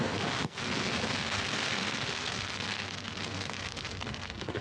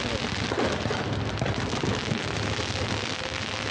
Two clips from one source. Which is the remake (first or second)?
first